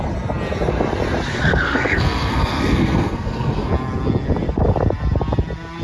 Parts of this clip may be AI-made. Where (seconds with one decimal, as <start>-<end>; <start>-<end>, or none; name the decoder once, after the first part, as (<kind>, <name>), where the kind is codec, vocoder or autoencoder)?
1.3-3.7 (codec, SNAC)